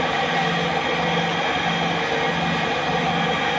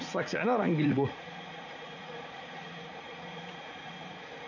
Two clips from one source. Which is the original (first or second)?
first